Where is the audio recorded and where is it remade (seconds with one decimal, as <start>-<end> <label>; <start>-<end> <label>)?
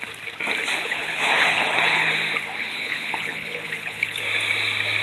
0.0-0.8 recorded; 0.8-2.1 remade; 2.1-2.6 recorded; 2.6-4.2 remade; 4.2-5.0 recorded